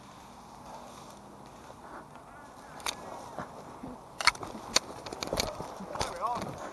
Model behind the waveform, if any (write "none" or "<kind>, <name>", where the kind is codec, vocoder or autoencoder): none